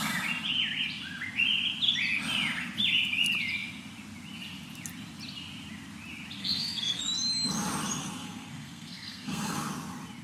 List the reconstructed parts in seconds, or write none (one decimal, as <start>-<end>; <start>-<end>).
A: 6.4-7.0; 8.0-9.7